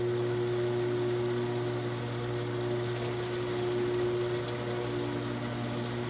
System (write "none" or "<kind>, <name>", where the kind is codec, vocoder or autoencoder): none